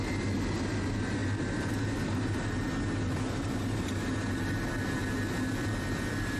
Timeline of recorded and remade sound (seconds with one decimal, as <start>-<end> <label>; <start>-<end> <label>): 0.0-6.4 recorded